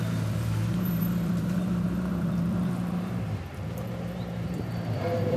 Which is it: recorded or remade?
remade